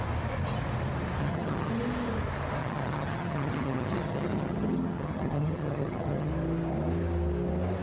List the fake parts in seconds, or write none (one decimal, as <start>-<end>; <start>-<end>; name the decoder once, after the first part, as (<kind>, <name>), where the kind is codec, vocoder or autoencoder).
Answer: 1.2-1.7 (vocoder, HiFi-GAN); 2.6-6.3